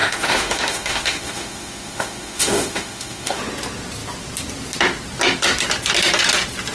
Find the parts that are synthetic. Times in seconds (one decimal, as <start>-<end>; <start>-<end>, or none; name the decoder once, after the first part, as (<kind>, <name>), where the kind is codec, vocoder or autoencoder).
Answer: 0.0-3.4 (autoencoder, DAC-VAE)